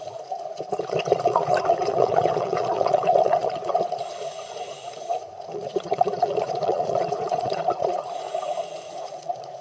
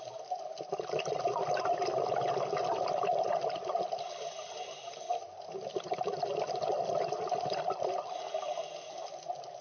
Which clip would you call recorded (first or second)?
second